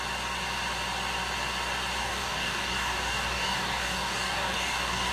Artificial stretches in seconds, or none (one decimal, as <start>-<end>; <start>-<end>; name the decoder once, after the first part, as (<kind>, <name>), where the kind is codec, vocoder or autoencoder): 2.0-5.1 (codec, DAC)